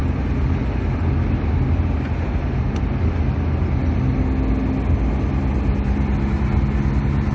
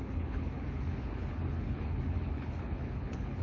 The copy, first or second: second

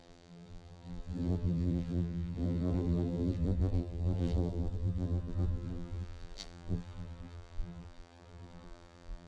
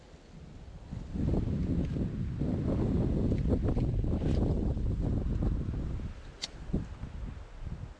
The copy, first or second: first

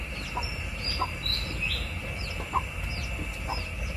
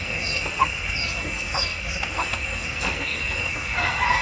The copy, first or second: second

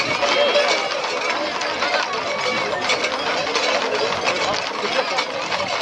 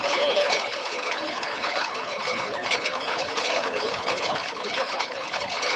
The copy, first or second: second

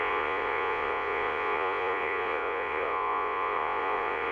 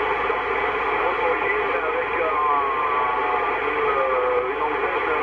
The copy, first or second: first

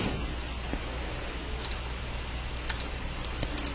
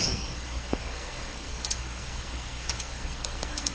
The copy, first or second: second